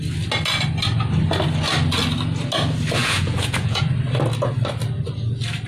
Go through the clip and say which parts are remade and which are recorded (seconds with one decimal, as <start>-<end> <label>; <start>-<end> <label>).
0.0-3.0 recorded; 3.0-3.8 remade; 3.8-5.7 recorded